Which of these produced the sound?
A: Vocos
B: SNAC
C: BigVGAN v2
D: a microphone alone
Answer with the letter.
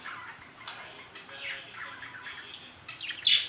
D